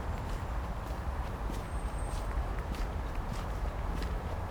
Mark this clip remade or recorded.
remade